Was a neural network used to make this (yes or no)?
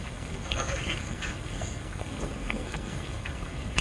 yes